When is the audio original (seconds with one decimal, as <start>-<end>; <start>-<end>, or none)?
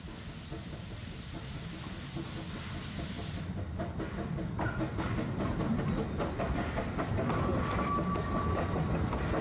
0.0-9.4